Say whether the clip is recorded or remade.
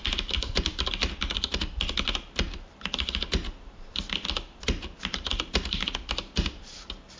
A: recorded